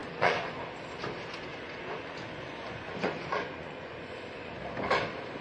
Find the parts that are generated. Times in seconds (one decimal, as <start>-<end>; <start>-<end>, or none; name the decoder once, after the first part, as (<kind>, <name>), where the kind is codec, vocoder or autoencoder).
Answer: 0.0-0.6 (vocoder, Vocos); 1.5-4.6